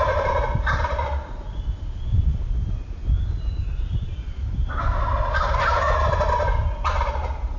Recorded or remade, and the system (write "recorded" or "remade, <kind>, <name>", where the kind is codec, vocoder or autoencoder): recorded